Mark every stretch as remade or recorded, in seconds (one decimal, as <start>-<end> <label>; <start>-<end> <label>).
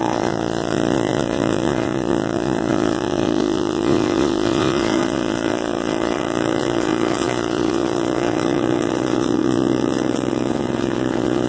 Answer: 0.0-11.5 remade